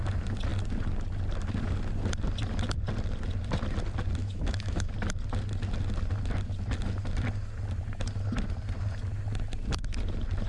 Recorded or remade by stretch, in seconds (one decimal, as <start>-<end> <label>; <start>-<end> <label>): 0.0-4.2 recorded; 4.2-4.9 remade; 4.9-10.5 recorded

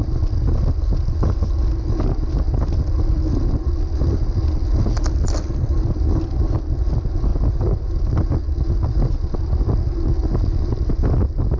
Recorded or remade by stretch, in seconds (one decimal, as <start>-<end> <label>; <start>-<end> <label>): 0.0-11.6 recorded

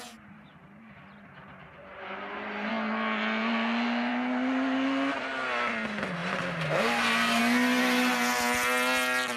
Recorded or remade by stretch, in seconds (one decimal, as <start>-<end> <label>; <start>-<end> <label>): 0.0-1.9 recorded; 1.9-2.7 remade; 2.7-6.2 recorded; 6.2-7.4 remade; 7.4-9.4 recorded

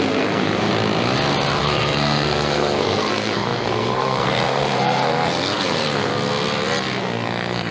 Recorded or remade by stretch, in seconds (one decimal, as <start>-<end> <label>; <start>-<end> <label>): 0.0-0.7 remade; 0.7-1.6 recorded; 1.6-6.1 remade; 6.1-7.0 recorded; 7.0-7.7 remade

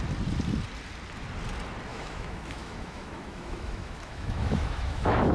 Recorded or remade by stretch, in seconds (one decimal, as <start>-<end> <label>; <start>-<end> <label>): 0.0-1.9 recorded; 1.9-5.3 remade

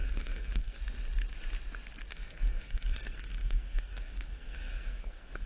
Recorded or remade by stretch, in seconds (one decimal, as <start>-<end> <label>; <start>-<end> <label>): 0.0-0.8 remade; 0.8-2.1 recorded; 2.1-5.5 remade

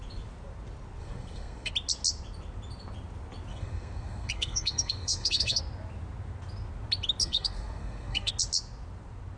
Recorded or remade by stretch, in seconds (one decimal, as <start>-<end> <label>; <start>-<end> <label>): 0.0-1.0 recorded; 1.0-1.7 remade; 1.7-3.5 recorded; 3.5-5.6 remade; 5.6-7.2 recorded; 7.2-8.3 remade; 8.3-9.4 recorded